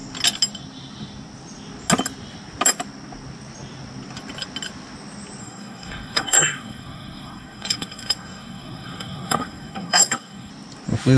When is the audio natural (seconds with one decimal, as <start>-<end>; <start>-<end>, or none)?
0.0-5.4; 10.5-11.2